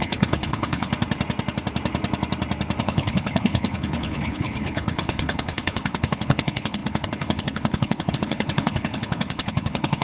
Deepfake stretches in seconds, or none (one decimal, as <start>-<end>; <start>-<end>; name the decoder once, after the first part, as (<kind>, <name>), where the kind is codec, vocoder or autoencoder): 0.0-0.9 (codec, HILCodec); 2.8-10.0

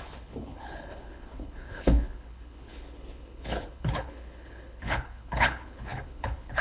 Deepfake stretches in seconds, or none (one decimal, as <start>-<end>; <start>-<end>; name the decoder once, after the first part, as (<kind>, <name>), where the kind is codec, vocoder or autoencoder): 0.0-6.6 (codec, HILCodec)